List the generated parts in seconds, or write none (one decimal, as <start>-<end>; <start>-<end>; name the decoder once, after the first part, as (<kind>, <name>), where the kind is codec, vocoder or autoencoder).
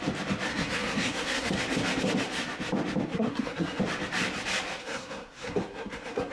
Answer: 0.5-1.6 (codec, SNAC); 3.1-3.8; 4.8-6.3